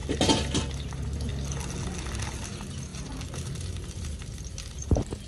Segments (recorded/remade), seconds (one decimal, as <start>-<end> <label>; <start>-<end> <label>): 0.0-0.8 recorded; 0.8-1.3 remade; 1.3-2.2 recorded; 2.2-5.3 remade